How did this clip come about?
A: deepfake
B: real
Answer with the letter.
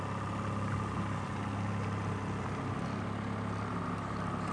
B